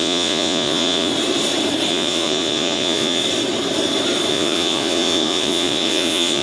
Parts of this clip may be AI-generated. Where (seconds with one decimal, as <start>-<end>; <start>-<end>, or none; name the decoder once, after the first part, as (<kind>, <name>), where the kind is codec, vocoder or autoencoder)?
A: 0.0-1.1 (vocoder, Vocos); 1.9-3.2; 4.3-6.4